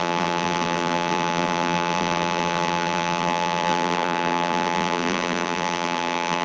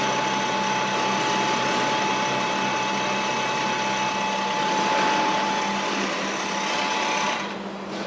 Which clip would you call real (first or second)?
second